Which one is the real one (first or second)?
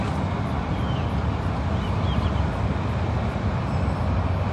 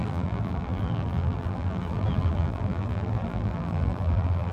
first